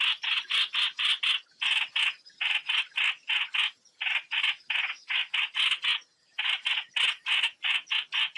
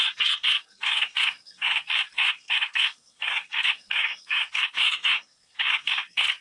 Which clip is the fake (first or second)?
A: second